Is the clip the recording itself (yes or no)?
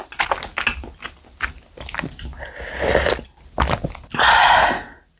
yes